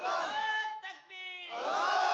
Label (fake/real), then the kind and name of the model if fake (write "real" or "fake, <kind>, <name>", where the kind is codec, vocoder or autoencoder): fake, autoencoder, DAC-VAE